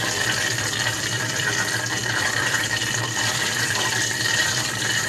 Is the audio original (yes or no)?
no